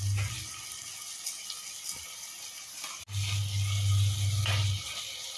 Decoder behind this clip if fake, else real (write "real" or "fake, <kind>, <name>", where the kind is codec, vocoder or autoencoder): real